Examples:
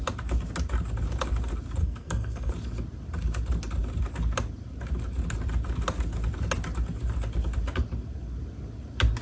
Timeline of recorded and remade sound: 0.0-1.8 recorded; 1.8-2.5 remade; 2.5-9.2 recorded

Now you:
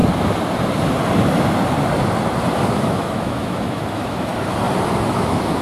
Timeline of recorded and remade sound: 0.0-2.7 recorded; 2.7-4.3 remade; 4.3-5.1 recorded; 5.1-5.6 remade